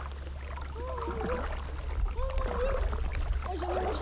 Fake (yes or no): no